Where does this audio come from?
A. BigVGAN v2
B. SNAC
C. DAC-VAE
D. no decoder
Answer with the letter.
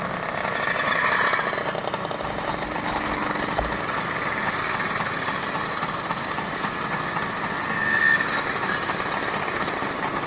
D